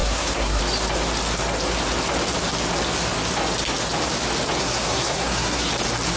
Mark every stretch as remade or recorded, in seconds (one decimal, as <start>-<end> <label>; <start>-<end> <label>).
0.0-0.6 remade; 0.6-4.6 recorded; 4.6-5.7 remade; 5.7-6.2 recorded